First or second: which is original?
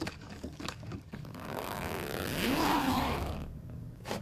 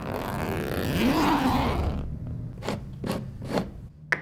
second